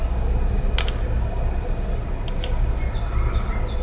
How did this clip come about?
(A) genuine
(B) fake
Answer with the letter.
A